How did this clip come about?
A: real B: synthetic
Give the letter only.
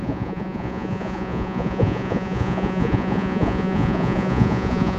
B